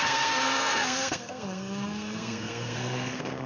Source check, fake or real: fake